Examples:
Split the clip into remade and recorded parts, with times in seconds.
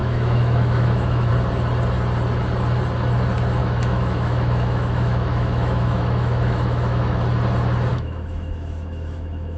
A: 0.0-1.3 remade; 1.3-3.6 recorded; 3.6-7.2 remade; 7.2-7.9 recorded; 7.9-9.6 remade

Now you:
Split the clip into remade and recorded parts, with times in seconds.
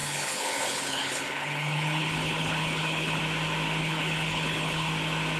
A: 0.0-3.2 remade; 3.2-3.8 recorded; 3.8-4.9 remade; 4.9-5.4 recorded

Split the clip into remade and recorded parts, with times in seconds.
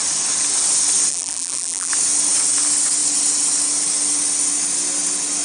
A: 0.0-1.1 recorded; 1.1-1.9 remade; 1.9-5.4 recorded